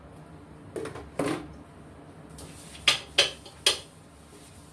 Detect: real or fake real